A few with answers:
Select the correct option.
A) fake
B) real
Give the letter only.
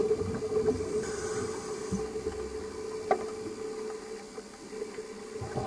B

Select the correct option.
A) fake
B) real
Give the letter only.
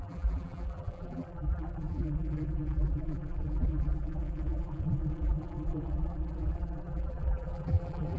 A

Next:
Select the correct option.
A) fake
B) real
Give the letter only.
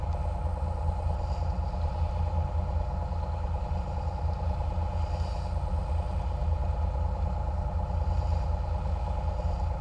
B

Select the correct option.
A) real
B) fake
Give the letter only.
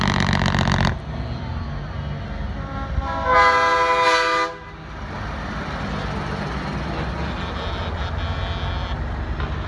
A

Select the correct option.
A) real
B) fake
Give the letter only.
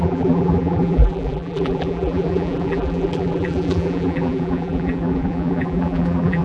B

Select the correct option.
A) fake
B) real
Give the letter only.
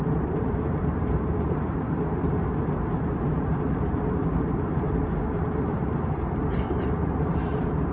A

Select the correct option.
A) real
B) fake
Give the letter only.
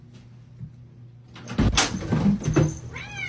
A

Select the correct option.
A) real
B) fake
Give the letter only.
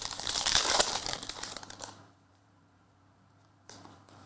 B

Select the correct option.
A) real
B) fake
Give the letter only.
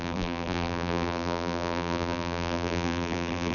B